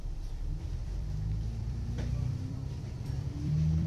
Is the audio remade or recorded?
remade